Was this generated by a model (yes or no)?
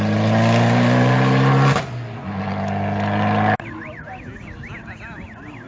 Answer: no